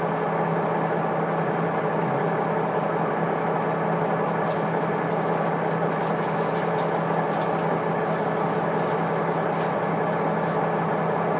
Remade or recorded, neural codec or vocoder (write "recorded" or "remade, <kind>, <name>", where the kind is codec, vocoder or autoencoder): recorded